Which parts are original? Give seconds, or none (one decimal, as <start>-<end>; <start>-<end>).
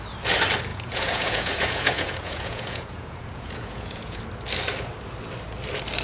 0.0-0.7; 4.2-6.0